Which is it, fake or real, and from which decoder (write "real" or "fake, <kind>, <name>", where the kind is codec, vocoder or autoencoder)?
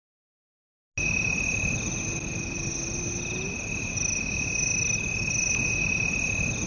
real